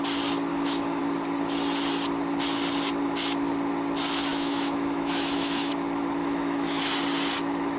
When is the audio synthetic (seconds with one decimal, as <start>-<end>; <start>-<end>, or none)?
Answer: 0.5-1.0; 4.3-5.7; 6.2-6.8